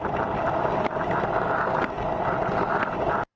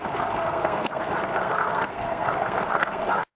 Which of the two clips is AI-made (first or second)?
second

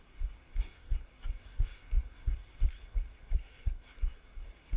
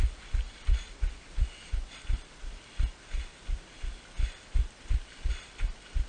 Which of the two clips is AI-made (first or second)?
first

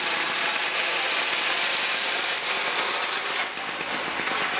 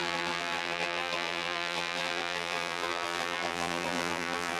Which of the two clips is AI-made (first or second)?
second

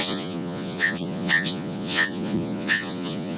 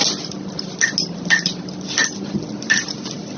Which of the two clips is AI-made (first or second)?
first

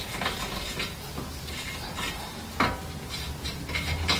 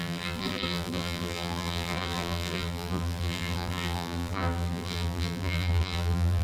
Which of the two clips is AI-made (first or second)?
second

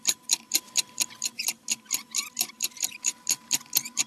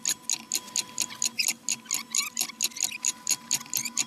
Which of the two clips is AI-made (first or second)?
first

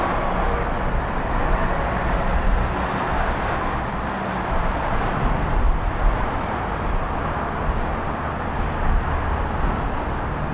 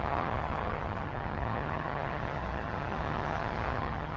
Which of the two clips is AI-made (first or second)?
second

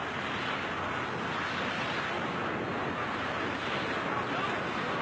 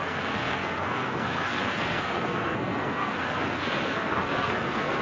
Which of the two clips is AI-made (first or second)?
second